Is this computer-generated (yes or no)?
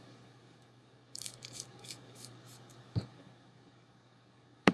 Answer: yes